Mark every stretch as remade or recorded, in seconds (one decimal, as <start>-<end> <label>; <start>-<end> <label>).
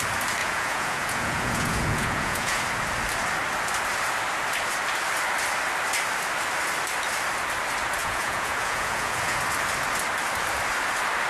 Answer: 0.0-0.4 recorded; 0.4-2.6 remade; 2.6-8.0 recorded; 8.0-9.4 remade; 9.4-11.3 recorded